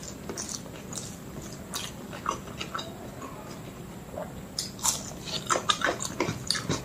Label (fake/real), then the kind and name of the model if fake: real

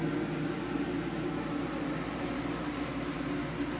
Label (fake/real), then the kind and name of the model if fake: real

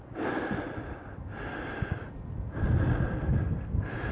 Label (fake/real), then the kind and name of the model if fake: real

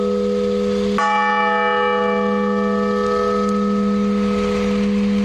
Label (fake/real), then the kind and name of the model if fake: real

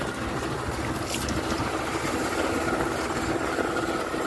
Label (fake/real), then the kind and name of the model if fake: real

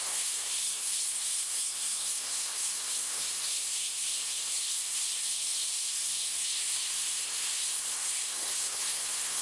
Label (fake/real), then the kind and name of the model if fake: fake, codec, SNAC